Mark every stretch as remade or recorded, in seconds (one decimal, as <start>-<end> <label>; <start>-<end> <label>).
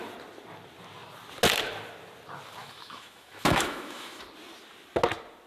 0.0-2.6 recorded; 2.6-4.2 remade; 4.2-5.5 recorded